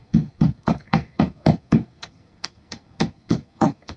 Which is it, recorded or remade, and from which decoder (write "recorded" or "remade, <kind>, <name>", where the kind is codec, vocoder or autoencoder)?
remade, codec, SNAC